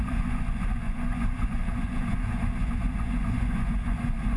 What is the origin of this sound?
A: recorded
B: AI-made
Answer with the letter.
B